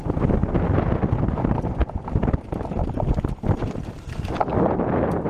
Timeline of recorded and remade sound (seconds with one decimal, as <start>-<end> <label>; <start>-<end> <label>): 0.0-1.8 recorded; 1.8-4.5 remade; 4.5-5.3 recorded